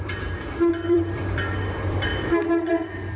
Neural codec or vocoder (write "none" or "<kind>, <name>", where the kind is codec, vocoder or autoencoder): vocoder, BigVGAN v2